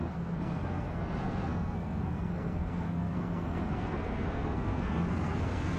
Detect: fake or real fake